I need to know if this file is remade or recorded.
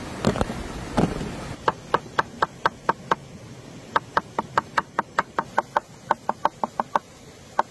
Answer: recorded